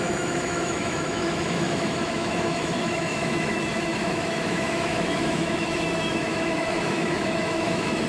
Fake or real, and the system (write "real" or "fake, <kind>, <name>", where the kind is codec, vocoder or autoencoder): fake, autoencoder, DAC-VAE